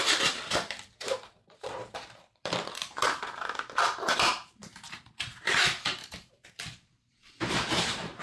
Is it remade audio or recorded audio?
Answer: remade